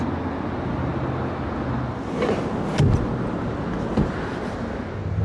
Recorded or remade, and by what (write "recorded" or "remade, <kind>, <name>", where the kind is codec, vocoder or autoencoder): recorded